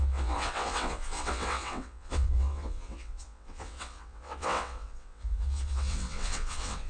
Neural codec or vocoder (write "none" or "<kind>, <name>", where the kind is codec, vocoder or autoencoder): vocoder, WaveNeXt